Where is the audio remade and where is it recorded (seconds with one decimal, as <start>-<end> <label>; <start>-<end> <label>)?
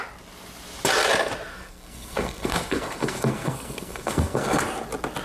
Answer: 0.0-1.5 recorded; 1.5-4.6 remade; 4.6-5.2 recorded